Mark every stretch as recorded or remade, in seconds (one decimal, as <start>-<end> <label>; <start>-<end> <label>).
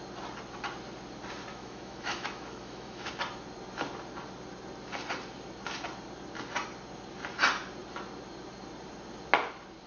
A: 0.0-1.5 recorded; 1.5-3.1 remade; 3.1-9.9 recorded